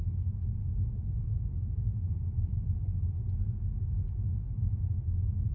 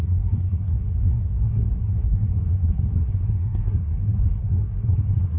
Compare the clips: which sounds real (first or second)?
first